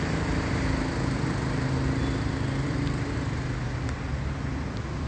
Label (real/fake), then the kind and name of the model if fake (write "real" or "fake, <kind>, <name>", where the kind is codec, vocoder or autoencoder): real